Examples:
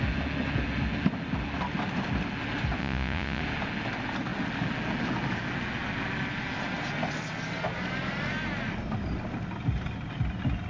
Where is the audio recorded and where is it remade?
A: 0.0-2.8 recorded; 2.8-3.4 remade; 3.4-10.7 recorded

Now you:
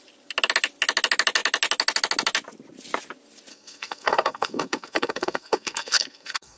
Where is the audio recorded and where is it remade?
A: 0.0-3.5 recorded; 3.5-6.6 remade

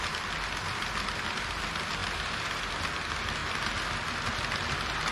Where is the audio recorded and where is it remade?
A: 0.0-2.0 recorded; 2.0-2.7 remade; 2.7-3.4 recorded; 3.4-3.9 remade; 3.9-5.1 recorded

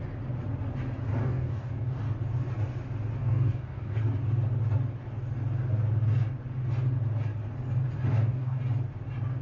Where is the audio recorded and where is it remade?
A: 0.0-1.2 recorded; 1.2-2.0 remade; 2.0-3.2 recorded; 3.2-4.0 remade; 4.0-8.1 recorded; 8.1-8.6 remade; 8.6-9.4 recorded

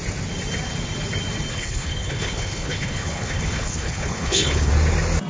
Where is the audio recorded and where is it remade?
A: 0.0-1.5 recorded; 1.5-4.7 remade; 4.7-5.3 recorded

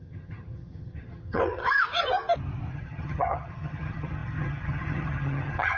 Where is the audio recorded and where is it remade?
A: 0.0-1.6 remade; 1.6-2.7 recorded; 2.7-5.8 remade

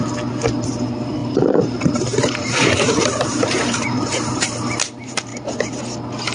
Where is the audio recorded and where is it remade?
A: 0.0-1.2 recorded; 1.2-4.7 remade; 4.7-5.3 recorded; 5.3-5.8 remade; 5.8-6.3 recorded

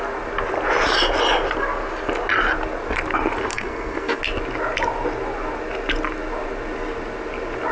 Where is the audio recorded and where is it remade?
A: 0.0-3.5 recorded; 3.5-4.2 remade; 4.2-7.7 recorded